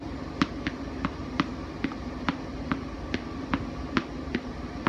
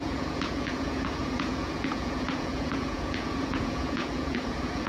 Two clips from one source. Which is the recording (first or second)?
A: first